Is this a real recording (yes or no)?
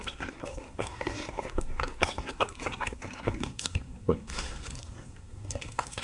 no